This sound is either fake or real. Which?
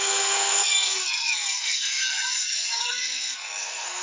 fake